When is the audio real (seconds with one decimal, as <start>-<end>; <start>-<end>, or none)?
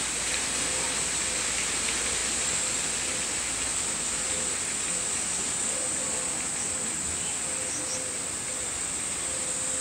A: 0.0-9.8